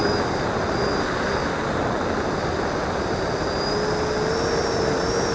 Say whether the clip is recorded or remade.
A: recorded